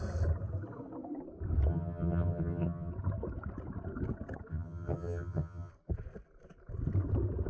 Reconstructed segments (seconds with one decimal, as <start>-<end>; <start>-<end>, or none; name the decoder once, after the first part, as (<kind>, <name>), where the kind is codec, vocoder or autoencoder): 1.7-2.9 (vocoder, HiFi-GAN); 4.5-5.7